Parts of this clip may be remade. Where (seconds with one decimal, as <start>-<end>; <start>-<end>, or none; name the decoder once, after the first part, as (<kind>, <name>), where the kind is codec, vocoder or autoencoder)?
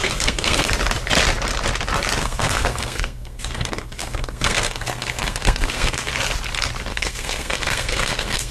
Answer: 0.0-0.7 (codec, SNAC); 2.2-6.1; 6.9-8.5